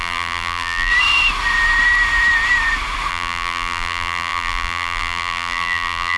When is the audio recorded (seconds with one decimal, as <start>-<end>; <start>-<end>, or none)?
0.9-3.1

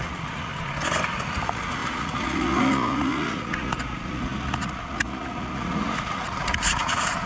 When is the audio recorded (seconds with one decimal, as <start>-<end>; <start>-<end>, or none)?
0.5-1.3